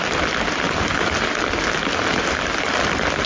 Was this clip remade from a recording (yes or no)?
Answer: no